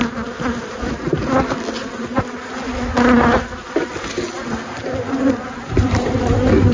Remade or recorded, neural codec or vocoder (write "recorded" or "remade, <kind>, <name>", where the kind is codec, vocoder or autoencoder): recorded